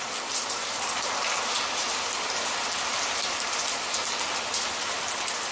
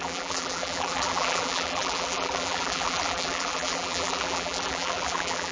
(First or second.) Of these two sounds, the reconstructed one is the second